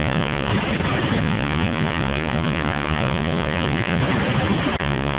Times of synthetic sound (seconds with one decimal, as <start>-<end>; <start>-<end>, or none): 0.0-0.5; 1.2-4.0; 4.8-5.2